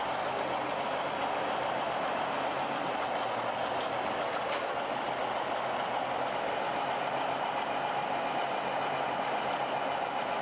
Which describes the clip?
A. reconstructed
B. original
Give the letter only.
B